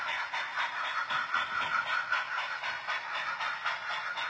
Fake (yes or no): no